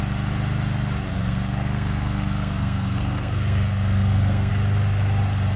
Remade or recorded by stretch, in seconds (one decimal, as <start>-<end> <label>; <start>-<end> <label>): 0.0-1.1 recorded; 1.1-4.5 remade; 4.5-5.6 recorded